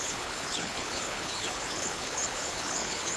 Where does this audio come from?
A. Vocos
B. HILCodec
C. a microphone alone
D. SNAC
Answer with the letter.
B